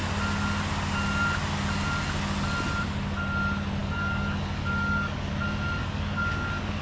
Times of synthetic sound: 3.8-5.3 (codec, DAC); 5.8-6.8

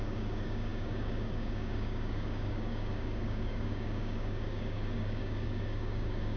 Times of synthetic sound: 0.0-6.4 (codec, DAC)